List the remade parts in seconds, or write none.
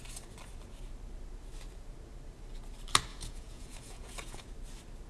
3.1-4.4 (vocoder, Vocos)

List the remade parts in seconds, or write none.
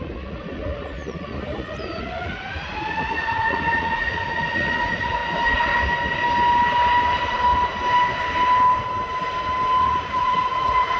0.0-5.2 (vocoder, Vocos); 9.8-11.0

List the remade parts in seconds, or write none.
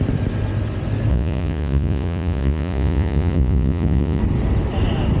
1.1-4.2 (vocoder, Vocos)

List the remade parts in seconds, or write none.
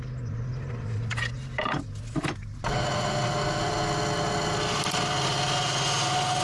none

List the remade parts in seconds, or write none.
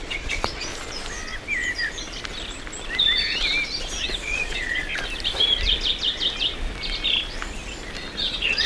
0.0-0.7 (vocoder, Vocos); 3.9-4.8; 8.2-8.7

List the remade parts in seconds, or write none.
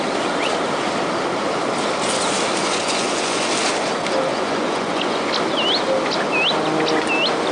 2.6-3.5 (vocoder, Vocos); 4.3-5.3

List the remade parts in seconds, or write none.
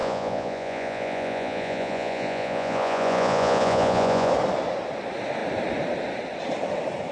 0.0-4.3 (vocoder, Vocos)